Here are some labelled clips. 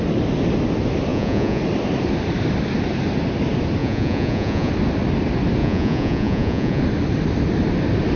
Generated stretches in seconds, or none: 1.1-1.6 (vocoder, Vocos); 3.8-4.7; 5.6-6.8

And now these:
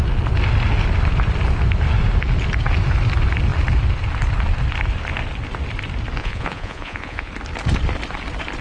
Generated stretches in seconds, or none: 6.2-7.3 (vocoder, Vocos)

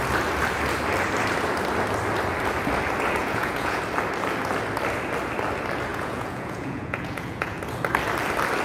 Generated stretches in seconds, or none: 3.2-3.8 (vocoder, Vocos); 5.9-7.6

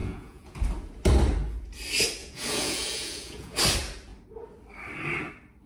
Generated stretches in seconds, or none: 0.0-0.6 (vocoder, Vocos); 2.2-3.6